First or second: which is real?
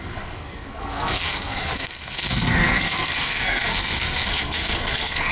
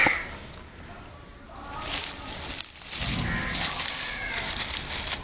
second